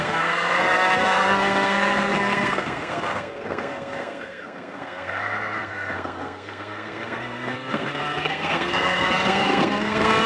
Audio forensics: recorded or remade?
remade